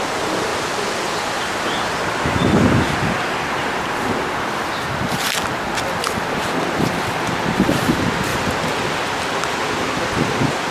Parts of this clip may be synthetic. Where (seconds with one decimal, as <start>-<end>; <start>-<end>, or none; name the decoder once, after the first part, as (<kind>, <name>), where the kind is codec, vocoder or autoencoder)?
0.5-4.7 (vocoder, BigVGAN v2); 8.3-9.5